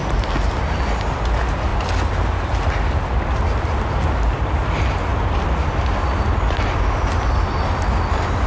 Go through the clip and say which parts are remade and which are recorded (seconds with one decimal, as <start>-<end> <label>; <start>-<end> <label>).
0.0-8.5 recorded